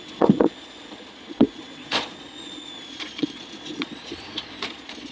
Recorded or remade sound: remade